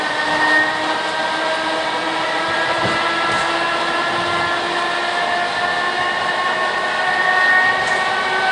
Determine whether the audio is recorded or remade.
recorded